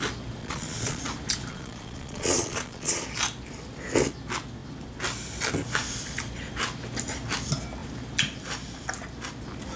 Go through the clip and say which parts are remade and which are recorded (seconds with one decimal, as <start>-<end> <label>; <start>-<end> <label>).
0.0-0.4 recorded; 0.4-1.0 remade; 1.0-1.5 recorded; 1.5-3.0 remade; 3.0-9.8 recorded